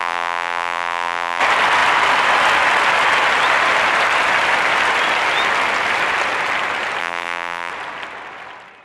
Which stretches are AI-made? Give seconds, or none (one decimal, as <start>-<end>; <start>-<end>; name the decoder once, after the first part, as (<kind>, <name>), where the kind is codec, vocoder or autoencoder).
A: 0.0-1.4 (vocoder, BigVGAN v2); 7.0-7.7